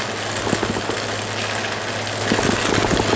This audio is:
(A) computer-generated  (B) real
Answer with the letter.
B